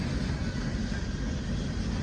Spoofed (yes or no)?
no